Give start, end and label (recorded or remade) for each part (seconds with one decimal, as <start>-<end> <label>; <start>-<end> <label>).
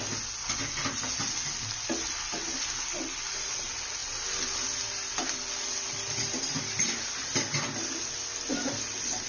0.0-9.3 recorded